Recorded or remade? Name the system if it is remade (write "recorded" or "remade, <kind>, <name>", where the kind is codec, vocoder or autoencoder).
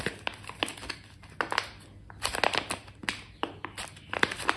recorded